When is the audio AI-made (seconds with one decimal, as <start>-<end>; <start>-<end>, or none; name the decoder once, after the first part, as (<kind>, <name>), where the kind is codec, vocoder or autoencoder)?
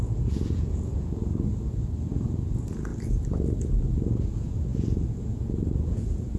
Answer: 0.0-1.2 (vocoder, Vocos); 2.0-2.9; 4.3-6.4